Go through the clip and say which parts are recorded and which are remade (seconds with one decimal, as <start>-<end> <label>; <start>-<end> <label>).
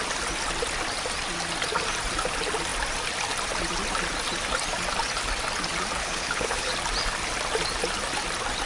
0.0-6.0 recorded; 6.0-6.7 remade; 6.7-8.7 recorded